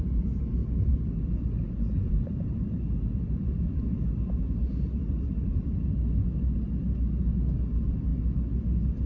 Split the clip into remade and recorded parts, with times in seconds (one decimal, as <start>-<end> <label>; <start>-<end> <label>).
0.0-0.6 recorded; 0.6-1.4 remade; 1.4-2.1 recorded; 2.1-4.4 remade; 4.4-5.0 recorded; 5.0-7.0 remade; 7.0-9.1 recorded